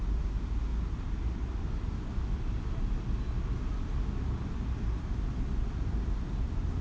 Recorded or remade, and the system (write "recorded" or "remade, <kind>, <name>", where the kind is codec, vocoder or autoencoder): recorded